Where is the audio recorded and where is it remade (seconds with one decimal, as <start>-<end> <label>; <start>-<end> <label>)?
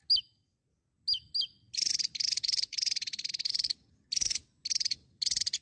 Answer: 0.0-5.6 recorded